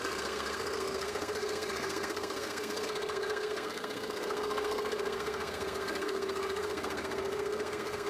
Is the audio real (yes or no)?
no